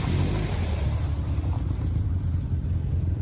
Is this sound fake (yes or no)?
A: no